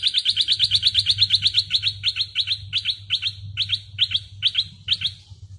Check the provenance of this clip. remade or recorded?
recorded